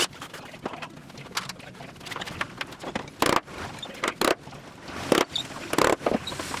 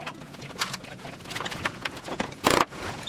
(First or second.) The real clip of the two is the first